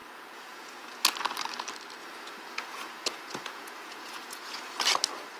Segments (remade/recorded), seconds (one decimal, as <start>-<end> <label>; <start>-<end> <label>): 0.0-1.0 remade; 1.0-2.0 recorded; 2.0-4.8 remade; 4.8-5.4 recorded